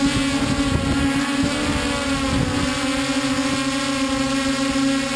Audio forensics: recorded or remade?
recorded